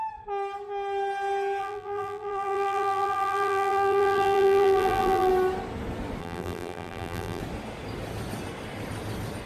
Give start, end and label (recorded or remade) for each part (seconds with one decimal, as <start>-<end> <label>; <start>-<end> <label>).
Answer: 0.0-1.6 recorded; 1.6-5.3 remade; 5.3-6.2 recorded; 6.2-7.4 remade; 7.4-9.5 recorded